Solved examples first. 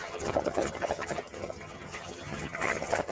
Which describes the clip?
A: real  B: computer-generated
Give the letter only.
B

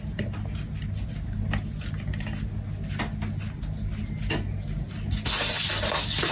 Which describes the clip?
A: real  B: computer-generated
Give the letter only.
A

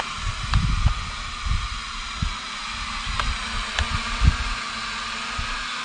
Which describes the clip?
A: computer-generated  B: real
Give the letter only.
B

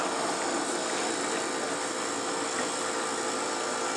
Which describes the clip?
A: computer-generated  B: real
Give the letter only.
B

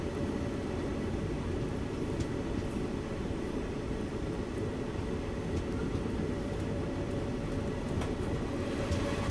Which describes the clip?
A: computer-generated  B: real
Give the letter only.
B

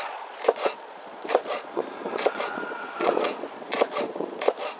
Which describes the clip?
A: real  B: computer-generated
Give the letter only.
B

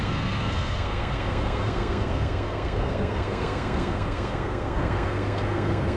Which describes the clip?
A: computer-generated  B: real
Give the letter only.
A